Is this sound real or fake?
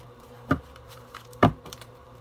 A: fake